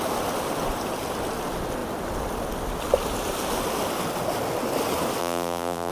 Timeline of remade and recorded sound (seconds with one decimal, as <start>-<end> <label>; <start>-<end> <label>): 0.0-5.2 recorded; 5.2-5.9 remade